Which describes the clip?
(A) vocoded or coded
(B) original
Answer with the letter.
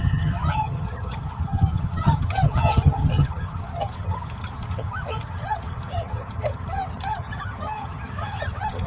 A